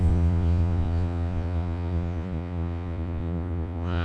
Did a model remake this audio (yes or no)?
yes